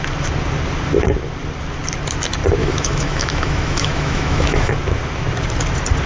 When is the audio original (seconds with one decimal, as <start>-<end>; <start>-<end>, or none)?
0.0-2.6; 4.7-6.1